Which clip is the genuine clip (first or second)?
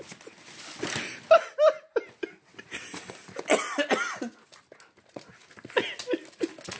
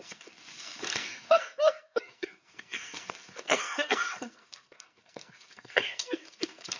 first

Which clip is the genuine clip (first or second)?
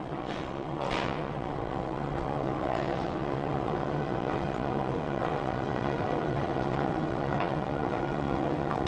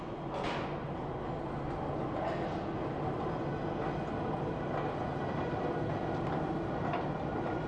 second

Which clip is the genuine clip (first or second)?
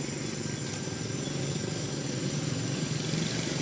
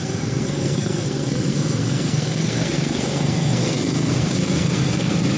first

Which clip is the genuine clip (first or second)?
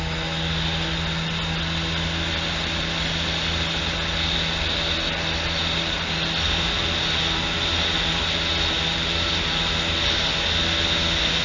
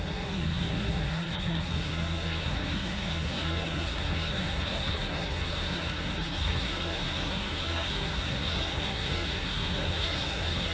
first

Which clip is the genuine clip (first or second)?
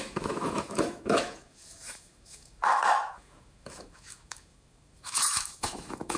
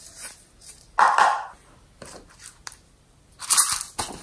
second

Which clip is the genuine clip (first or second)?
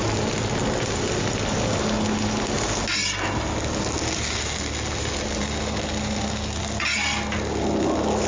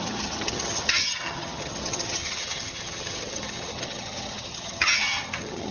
first